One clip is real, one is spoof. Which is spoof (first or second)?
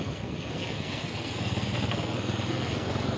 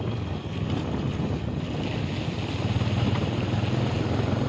first